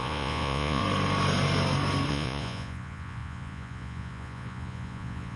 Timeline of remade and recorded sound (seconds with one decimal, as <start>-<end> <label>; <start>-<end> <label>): 0.0-0.8 remade; 0.8-2.1 recorded; 2.1-5.4 remade